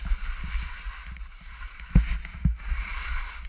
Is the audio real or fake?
real